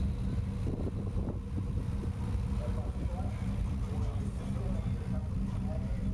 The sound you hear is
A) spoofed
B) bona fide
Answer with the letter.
B